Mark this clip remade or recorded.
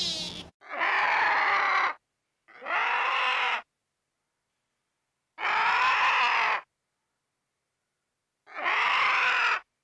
recorded